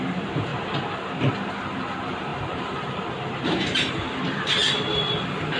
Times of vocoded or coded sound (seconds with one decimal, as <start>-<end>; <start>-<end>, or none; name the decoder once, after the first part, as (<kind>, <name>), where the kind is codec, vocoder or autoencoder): 0.0-4.6 (vocoder, BigVGAN v2)